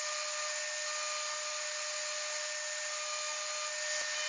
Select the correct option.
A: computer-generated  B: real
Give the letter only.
B